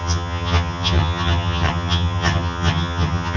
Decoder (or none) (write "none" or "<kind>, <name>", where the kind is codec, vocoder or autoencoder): vocoder, HiFi-GAN